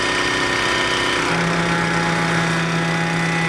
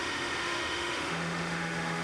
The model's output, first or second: second